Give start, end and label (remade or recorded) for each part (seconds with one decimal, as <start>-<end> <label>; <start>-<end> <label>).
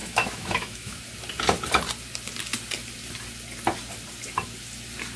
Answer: 0.0-1.0 remade; 1.0-5.2 recorded